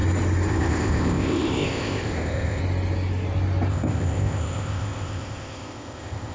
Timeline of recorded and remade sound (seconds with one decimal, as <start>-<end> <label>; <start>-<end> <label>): 0.0-0.5 recorded; 0.5-2.6 remade; 2.6-3.7 recorded; 3.7-6.3 remade